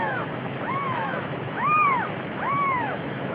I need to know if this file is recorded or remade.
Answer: remade